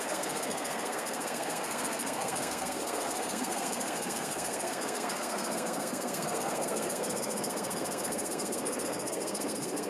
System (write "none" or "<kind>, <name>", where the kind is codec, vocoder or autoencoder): codec, SNAC